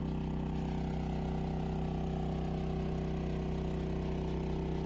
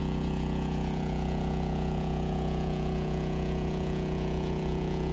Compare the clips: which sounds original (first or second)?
first